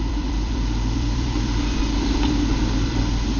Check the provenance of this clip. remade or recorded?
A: remade